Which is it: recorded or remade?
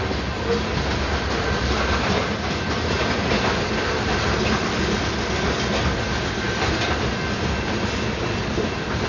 recorded